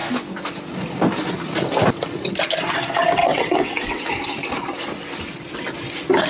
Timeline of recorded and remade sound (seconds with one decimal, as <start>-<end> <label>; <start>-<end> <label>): 0.0-3.2 recorded; 3.2-4.1 remade; 4.1-6.3 recorded